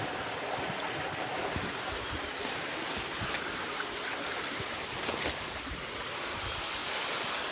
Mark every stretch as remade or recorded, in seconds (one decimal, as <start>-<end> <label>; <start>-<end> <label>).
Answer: 0.0-1.3 recorded; 1.3-2.3 remade; 2.3-6.8 recorded; 6.8-7.5 remade